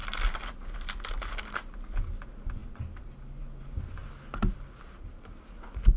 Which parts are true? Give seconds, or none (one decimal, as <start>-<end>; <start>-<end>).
0.0-6.0